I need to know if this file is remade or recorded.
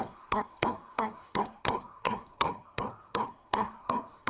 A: remade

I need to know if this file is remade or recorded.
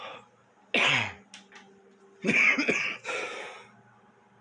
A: recorded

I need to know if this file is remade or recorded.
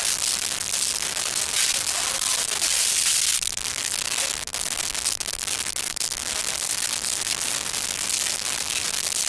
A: recorded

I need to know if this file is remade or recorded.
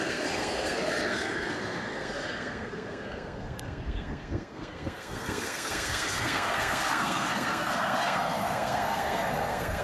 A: remade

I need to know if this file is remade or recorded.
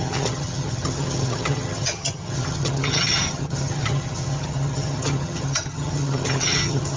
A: remade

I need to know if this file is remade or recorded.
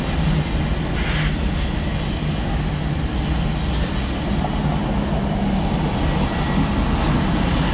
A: recorded